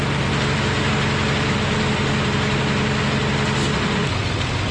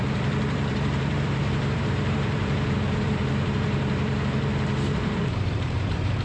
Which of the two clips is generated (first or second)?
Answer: second